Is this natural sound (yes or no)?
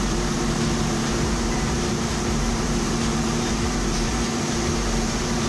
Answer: no